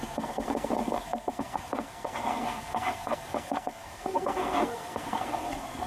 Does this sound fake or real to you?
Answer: fake